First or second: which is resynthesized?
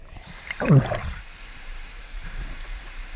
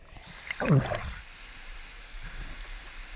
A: first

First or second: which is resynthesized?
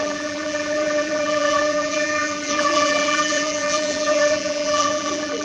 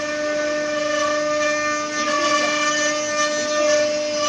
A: first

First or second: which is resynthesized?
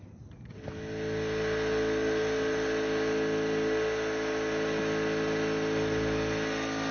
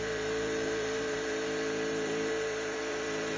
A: second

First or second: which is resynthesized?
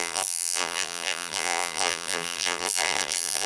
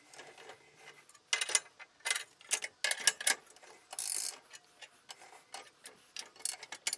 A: first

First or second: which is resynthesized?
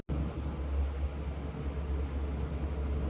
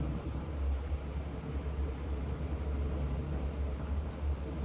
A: second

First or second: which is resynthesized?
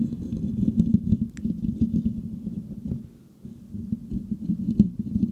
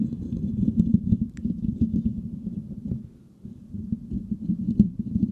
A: second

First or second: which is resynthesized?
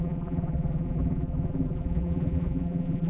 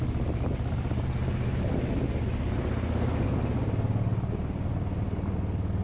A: first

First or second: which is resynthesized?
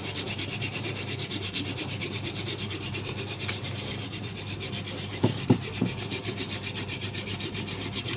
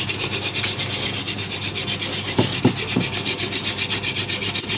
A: first